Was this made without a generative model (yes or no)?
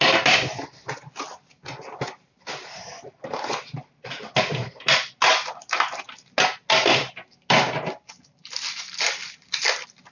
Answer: yes